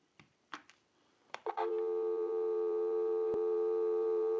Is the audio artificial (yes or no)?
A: yes